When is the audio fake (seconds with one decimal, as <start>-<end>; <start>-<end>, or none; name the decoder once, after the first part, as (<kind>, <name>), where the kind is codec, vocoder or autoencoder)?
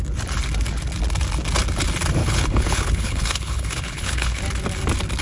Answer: 2.2-4.4 (codec, HILCodec)